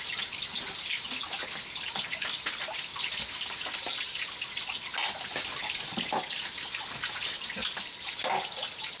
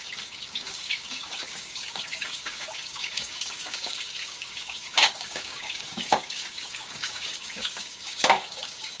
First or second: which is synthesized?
second